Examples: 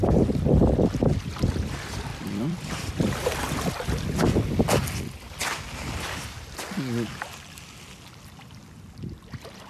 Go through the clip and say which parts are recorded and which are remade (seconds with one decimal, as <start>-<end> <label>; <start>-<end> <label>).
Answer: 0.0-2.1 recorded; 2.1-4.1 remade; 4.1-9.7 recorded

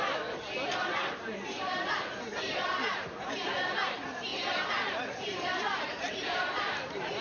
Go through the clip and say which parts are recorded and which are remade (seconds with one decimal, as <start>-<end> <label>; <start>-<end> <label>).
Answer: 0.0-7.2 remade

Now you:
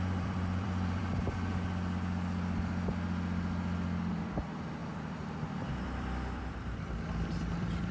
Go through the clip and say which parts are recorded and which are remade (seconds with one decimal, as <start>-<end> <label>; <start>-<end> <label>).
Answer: 0.0-1.0 remade; 1.0-4.1 recorded; 4.1-7.9 remade

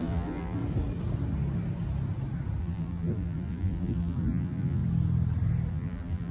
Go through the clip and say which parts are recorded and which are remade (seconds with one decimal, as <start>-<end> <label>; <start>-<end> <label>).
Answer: 0.0-0.6 remade; 0.6-2.6 recorded; 2.6-4.8 remade; 4.8-5.7 recorded; 5.7-6.3 remade